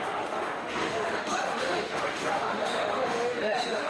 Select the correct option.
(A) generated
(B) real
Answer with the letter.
A